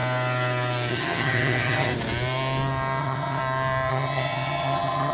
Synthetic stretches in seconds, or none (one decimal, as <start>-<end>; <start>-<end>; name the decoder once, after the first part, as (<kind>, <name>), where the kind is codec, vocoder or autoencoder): 0.9-1.9 (vocoder, HiFi-GAN); 3.0-3.4; 3.9-5.1